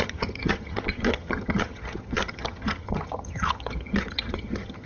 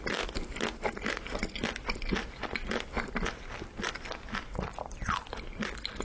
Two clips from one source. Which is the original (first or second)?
second